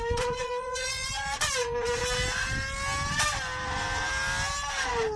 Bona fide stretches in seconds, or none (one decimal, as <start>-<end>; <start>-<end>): 2.0-5.2